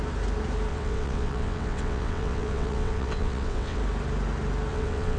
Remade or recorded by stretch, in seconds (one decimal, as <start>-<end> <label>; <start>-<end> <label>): 0.0-0.7 recorded; 0.7-3.8 remade; 3.8-4.7 recorded; 4.7-5.2 remade